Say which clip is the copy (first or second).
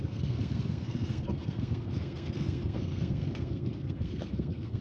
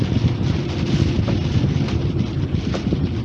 first